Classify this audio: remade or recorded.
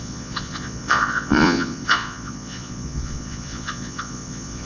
remade